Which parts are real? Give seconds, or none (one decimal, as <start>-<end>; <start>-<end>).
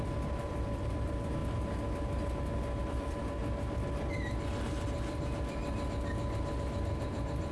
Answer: 1.4-2.8; 3.4-4.7; 5.6-6.6